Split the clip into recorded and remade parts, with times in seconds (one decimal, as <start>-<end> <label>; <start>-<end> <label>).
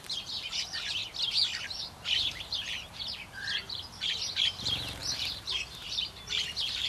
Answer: 0.0-1.0 remade; 1.0-1.6 recorded; 1.6-6.9 remade